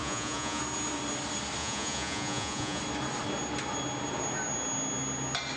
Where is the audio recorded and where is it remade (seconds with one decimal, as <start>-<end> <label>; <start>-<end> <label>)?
0.0-0.6 remade; 0.6-1.6 recorded; 1.6-2.8 remade; 2.8-5.6 recorded